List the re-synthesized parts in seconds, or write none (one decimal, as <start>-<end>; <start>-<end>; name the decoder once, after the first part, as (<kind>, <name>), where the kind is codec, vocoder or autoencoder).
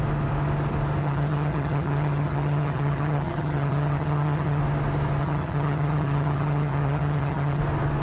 1.0-4.6 (vocoder, HiFi-GAN); 5.2-7.6